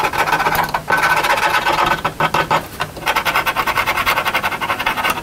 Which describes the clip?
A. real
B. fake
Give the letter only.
A